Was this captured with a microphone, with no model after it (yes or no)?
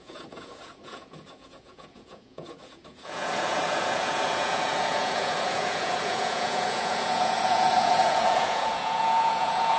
no